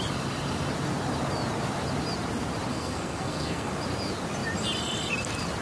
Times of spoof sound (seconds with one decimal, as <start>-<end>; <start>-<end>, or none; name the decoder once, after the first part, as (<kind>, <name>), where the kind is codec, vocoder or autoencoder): 2.7-3.7 (codec, SNAC)